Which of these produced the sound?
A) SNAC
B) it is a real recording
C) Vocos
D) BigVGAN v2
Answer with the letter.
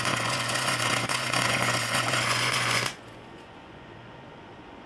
C